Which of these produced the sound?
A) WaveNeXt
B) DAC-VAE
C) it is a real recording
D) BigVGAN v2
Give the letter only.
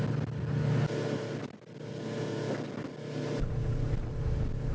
C